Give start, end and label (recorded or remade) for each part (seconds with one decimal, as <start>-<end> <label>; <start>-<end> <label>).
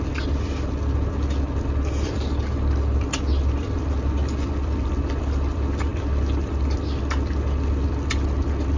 0.0-8.8 recorded